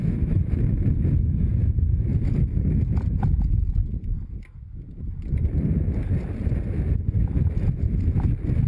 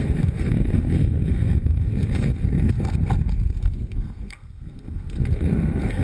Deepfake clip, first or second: second